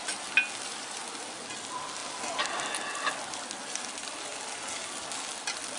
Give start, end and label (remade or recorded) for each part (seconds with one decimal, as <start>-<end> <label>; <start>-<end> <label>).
0.0-5.8 recorded